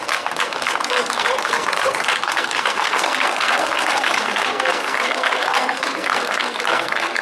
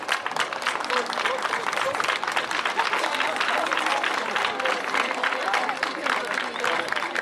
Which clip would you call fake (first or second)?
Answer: first